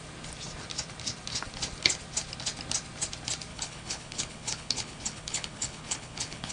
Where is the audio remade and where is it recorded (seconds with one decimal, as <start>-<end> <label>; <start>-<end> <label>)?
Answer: 0.0-3.5 recorded; 3.5-6.5 remade